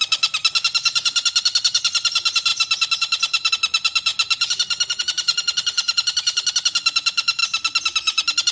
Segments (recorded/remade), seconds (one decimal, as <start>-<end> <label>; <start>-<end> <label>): 0.0-8.5 recorded